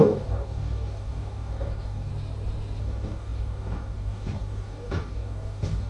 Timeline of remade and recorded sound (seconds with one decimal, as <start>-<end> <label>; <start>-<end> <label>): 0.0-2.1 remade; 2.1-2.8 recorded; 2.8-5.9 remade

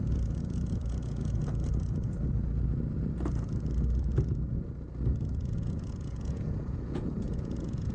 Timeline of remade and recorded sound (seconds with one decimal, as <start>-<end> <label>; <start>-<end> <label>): 0.0-1.4 remade; 1.4-5.3 recorded; 5.3-7.9 remade

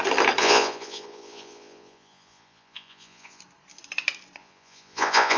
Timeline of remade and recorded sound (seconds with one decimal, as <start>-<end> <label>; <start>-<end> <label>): 0.0-0.4 recorded; 0.4-3.4 remade; 3.4-4.4 recorded; 4.4-5.4 remade

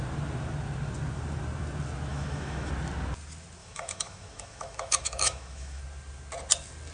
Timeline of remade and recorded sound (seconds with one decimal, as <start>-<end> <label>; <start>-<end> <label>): 0.0-2.1 recorded; 2.1-2.7 remade; 2.7-3.6 recorded; 3.6-5.8 remade; 5.8-6.9 recorded

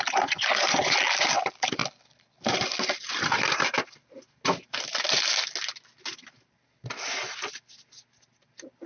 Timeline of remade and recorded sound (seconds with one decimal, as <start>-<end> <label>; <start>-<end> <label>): 0.0-8.9 recorded

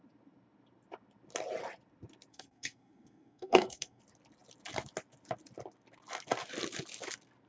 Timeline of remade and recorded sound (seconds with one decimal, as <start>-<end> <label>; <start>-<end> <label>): 0.0-2.3 recorded; 2.3-4.0 remade; 4.0-7.5 recorded

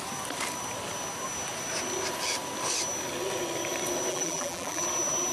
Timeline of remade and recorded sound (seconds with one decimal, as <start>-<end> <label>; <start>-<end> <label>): 0.0-4.1 recorded; 4.1-4.8 remade; 4.8-5.3 recorded

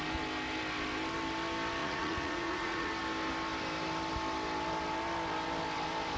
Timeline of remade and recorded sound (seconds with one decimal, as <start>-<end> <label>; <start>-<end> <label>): 0.0-1.8 recorded; 1.8-2.9 remade; 2.9-6.2 recorded